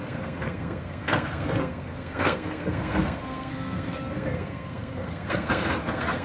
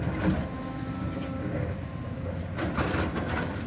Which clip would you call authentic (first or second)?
second